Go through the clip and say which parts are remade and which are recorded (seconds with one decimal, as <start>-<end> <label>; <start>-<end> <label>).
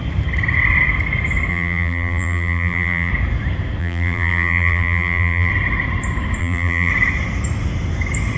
0.0-1.5 recorded; 1.5-3.1 remade; 3.1-3.8 recorded; 3.8-5.5 remade; 5.5-6.4 recorded; 6.4-6.9 remade; 6.9-8.4 recorded